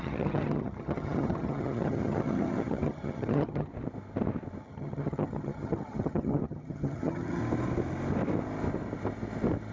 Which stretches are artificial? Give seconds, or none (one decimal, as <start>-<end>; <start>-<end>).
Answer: 0.0-3.7; 4.6-7.4